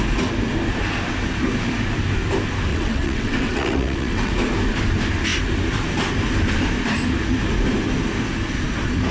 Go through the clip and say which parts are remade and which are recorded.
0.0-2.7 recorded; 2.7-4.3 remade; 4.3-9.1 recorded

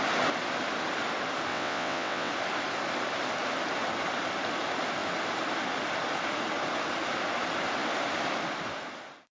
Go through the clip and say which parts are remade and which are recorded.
0.0-1.5 recorded; 1.5-2.3 remade; 2.3-9.3 recorded

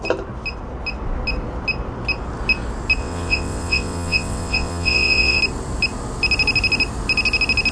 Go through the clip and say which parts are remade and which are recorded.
0.0-3.0 recorded; 3.0-5.4 remade; 5.4-7.7 recorded

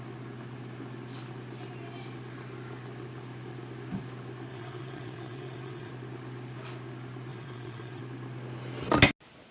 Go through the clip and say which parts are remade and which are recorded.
0.0-4.5 recorded; 4.5-5.9 remade; 5.9-7.3 recorded; 7.3-8.0 remade; 8.0-9.5 recorded